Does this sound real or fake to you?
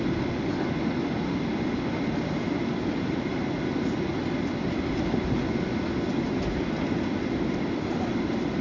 real